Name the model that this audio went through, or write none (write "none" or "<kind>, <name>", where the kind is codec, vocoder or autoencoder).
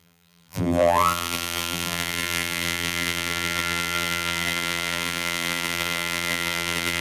vocoder, BigVGAN v2